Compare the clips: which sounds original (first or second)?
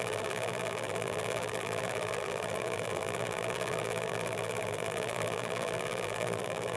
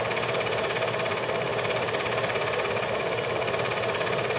second